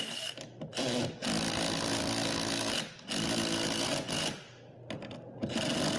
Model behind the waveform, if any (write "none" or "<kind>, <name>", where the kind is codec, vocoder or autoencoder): none